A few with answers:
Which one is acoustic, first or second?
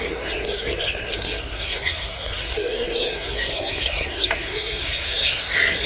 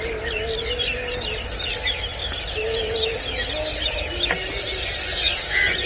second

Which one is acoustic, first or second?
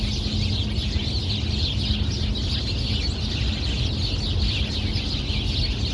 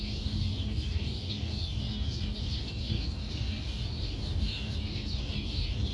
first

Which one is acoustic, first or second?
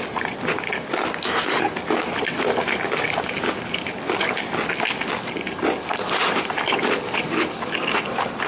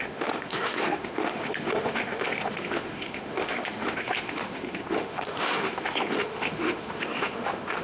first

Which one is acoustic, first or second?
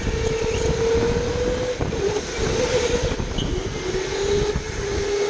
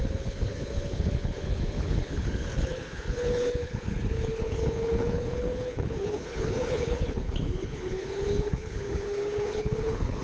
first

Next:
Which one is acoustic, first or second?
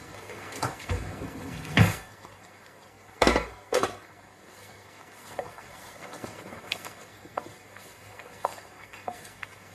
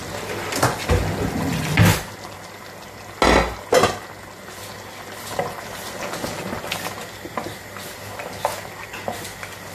second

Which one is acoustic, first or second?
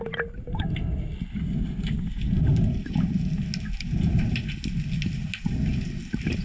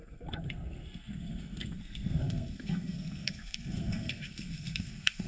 first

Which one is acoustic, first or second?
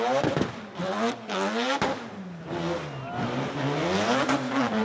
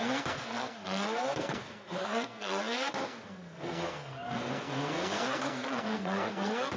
first